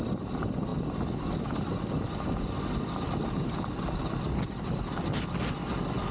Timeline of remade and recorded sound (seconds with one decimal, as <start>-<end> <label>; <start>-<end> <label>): 0.0-6.1 recorded